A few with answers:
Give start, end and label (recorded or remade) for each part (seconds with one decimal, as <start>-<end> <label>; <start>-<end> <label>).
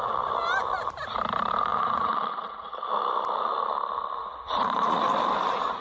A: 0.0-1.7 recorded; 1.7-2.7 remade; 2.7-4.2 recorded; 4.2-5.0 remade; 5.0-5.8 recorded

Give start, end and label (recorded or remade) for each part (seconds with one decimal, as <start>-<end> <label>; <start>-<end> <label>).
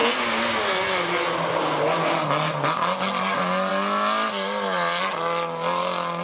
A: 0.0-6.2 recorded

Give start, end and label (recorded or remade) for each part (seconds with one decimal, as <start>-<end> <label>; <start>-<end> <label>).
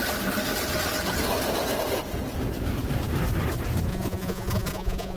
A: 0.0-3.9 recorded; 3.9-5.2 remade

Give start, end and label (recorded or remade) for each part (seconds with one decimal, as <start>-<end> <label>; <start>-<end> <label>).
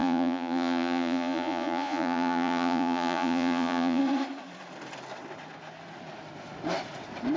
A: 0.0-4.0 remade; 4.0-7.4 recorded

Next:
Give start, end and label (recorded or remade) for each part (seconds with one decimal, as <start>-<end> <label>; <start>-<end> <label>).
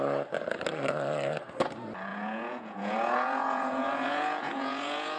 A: 0.0-2.1 recorded; 2.1-5.2 remade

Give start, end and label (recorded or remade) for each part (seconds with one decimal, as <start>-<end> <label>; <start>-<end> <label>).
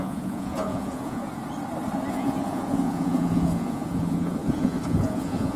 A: 0.0-1.2 remade; 1.2-2.1 recorded; 2.1-5.6 remade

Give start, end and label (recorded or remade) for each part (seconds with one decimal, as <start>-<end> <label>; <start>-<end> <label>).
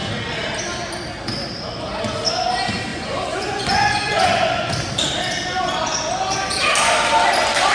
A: 0.0-2.9 recorded; 2.9-4.7 remade; 4.7-7.7 recorded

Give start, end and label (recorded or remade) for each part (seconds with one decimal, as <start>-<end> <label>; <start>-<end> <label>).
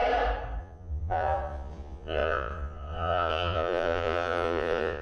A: 0.0-0.6 recorded; 0.6-5.0 remade